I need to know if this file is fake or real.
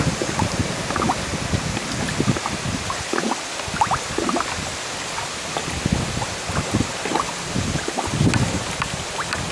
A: real